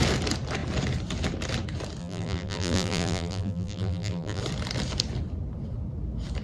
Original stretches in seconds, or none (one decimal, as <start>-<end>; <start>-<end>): 0.0-2.0; 4.4-6.4